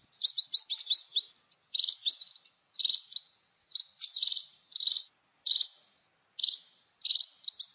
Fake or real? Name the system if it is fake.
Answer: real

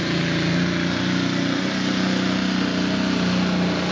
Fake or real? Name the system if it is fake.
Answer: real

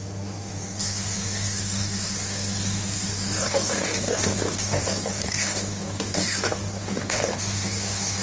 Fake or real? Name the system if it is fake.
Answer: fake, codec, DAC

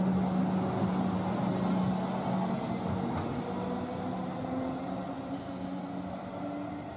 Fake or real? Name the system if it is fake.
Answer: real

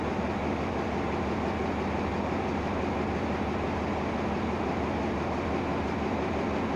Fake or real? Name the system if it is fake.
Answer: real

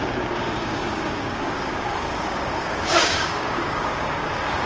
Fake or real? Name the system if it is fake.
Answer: fake, codec, DAC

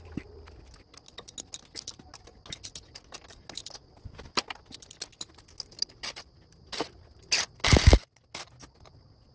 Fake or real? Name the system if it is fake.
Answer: real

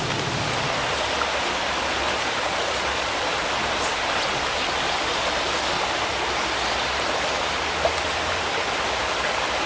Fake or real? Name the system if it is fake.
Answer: real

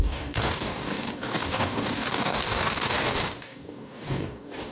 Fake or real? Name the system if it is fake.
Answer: fake, codec, DAC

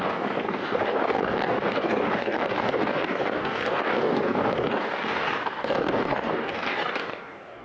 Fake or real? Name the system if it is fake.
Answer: fake, codec, DAC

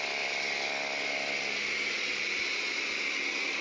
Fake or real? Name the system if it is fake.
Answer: real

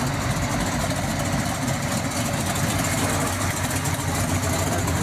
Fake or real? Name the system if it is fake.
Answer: real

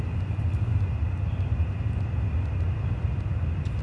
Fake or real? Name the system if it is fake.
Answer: real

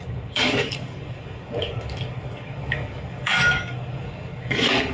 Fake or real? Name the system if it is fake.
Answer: fake, codec, DAC